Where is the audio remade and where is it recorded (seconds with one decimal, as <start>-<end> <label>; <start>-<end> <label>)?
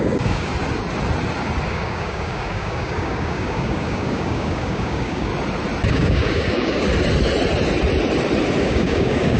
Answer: 0.0-0.5 remade; 0.5-1.7 recorded; 1.7-5.3 remade; 5.3-5.9 recorded; 5.9-6.9 remade; 6.9-8.6 recorded; 8.6-9.4 remade